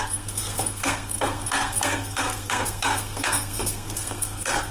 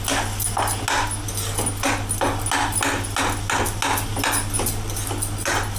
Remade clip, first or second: first